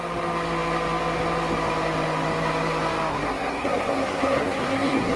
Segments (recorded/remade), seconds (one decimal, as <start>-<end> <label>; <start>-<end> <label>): 0.0-3.1 recorded; 3.1-5.2 remade